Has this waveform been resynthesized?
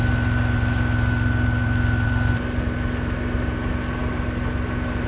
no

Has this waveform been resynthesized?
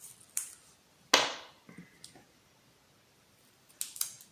no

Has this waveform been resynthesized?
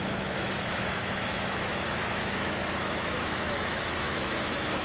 yes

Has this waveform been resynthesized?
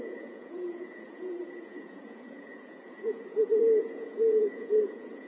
yes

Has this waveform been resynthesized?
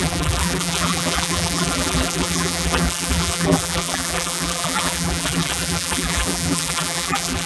yes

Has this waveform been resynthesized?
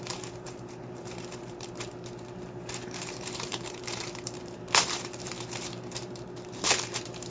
yes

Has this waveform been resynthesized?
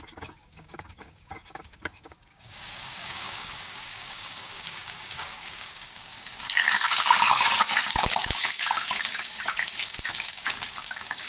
yes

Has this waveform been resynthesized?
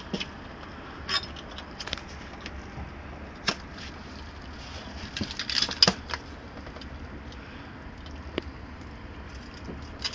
no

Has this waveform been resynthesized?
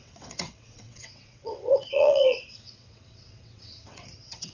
yes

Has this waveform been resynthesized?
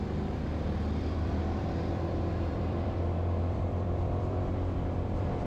yes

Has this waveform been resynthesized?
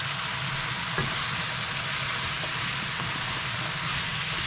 no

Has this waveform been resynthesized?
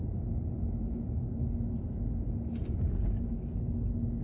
no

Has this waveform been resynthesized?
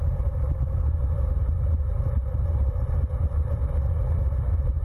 no